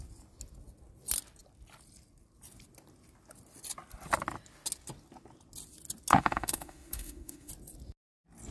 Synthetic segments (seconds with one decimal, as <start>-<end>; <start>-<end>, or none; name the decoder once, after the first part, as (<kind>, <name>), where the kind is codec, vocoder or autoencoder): 6.1-7.5 (autoencoder, DAC-VAE)